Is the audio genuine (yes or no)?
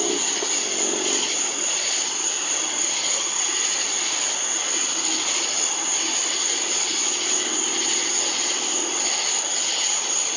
yes